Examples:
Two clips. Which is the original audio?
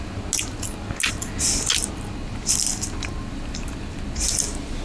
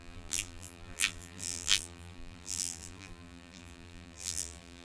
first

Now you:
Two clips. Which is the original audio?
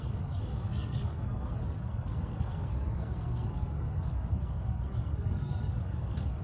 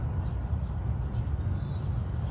second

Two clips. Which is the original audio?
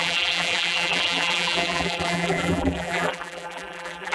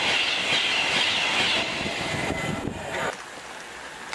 second